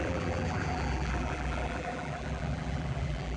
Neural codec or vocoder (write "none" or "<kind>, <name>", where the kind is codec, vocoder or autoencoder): vocoder, BigVGAN v2